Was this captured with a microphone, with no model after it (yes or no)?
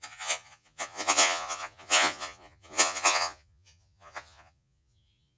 no